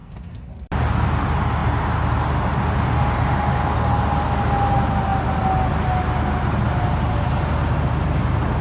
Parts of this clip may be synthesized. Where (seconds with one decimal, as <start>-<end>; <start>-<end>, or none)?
0.0-0.5